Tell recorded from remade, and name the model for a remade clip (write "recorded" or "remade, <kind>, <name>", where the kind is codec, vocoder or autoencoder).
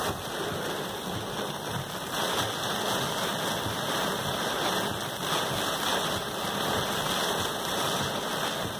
recorded